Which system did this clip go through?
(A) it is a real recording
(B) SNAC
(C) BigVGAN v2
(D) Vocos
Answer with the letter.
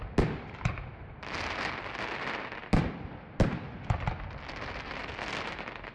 A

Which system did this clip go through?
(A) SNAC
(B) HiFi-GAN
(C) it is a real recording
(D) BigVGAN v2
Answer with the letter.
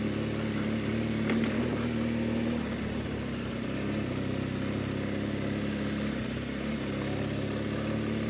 C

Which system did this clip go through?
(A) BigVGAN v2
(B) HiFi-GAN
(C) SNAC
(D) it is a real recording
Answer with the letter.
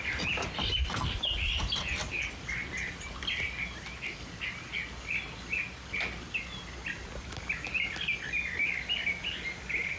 D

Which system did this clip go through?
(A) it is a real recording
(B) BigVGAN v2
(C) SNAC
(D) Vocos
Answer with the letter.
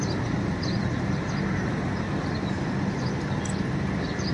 A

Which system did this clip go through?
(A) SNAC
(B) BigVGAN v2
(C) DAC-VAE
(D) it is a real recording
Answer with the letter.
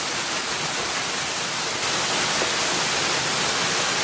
D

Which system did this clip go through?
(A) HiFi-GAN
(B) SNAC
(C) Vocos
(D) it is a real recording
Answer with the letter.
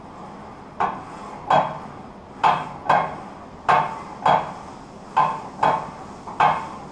D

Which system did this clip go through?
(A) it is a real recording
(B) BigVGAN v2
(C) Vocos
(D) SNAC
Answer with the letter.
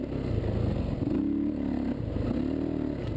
A